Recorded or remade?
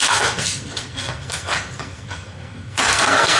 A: remade